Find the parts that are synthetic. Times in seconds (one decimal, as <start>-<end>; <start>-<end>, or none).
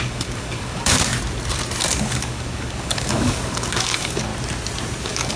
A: 0.0-1.1; 2.0-4.3; 5.0-5.4